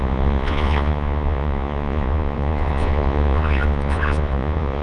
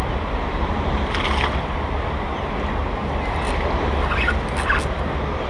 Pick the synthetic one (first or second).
first